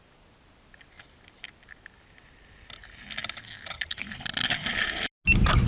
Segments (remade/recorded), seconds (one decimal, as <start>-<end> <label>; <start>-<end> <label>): 0.0-5.7 recorded